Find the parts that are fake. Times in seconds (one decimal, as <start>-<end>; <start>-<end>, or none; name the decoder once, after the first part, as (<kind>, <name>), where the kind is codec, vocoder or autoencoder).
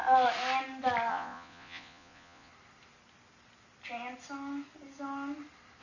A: 1.1-2.5 (vocoder, Vocos)